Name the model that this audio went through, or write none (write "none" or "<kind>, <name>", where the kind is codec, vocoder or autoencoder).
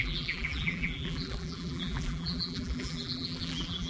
vocoder, BigVGAN v2